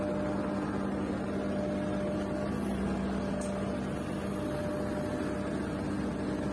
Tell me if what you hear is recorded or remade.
recorded